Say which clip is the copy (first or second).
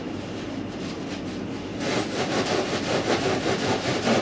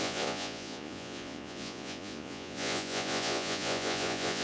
second